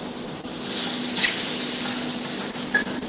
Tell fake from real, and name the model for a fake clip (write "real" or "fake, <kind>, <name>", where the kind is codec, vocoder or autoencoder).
real